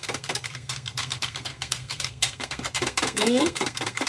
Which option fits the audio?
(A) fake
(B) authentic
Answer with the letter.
A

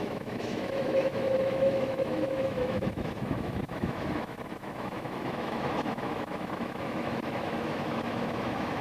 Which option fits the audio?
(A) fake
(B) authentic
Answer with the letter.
A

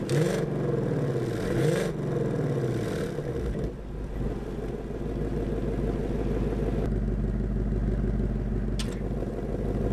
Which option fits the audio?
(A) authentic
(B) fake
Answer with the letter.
A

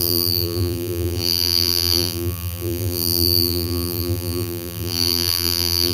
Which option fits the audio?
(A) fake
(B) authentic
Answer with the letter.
A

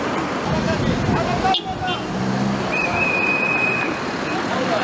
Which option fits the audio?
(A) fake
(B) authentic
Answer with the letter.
B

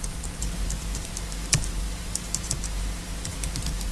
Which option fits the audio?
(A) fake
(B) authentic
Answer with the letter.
A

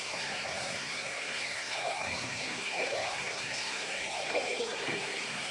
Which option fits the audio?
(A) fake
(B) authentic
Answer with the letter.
A